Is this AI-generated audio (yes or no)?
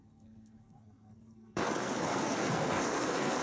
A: yes